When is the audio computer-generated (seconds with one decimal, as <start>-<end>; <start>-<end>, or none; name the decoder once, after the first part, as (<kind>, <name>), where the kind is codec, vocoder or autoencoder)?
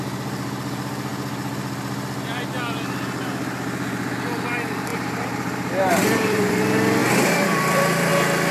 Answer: 4.9-6.6 (vocoder, BigVGAN v2); 7.0-8.1